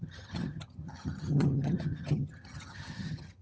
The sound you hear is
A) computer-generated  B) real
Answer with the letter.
A